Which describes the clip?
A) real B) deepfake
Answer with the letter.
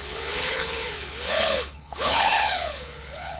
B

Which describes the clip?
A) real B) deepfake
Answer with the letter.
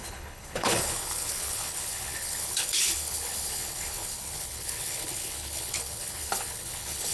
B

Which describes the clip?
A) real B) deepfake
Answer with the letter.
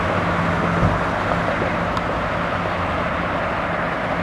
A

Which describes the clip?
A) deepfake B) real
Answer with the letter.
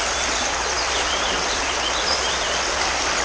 B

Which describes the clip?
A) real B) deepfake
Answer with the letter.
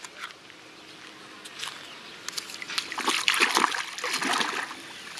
A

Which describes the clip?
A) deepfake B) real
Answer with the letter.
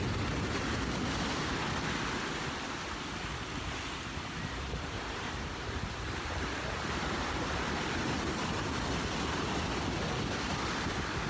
B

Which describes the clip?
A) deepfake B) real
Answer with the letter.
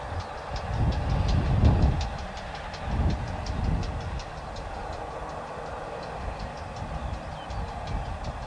B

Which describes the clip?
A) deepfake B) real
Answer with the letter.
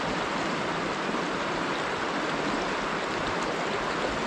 B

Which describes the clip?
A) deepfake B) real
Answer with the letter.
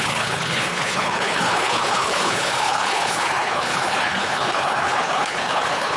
A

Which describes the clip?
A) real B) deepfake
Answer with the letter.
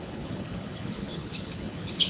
B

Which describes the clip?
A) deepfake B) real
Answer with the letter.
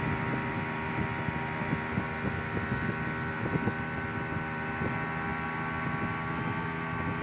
B